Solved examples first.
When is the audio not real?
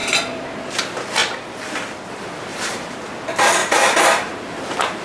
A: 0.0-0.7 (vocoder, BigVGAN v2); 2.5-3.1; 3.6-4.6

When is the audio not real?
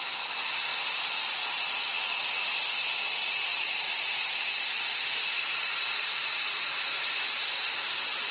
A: 0.7-1.4 (vocoder, BigVGAN v2); 3.5-8.3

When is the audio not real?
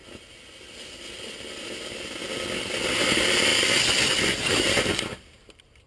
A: 1.6-2.2 (vocoder, BigVGAN v2); 2.9-3.5; 4.5-5.9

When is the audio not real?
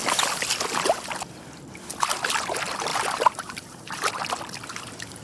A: 2.9-4.1 (vocoder, BigVGAN v2)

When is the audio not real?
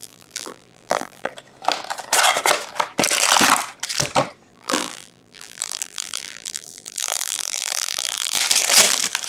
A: 0.0-1.3 (vocoder, BigVGAN v2); 4.5-8.4